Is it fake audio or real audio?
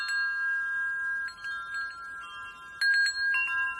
real